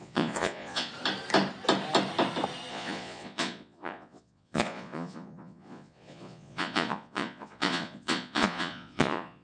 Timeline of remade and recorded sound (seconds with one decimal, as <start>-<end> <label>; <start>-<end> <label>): 0.0-0.9 remade; 0.9-2.7 recorded; 2.7-9.4 remade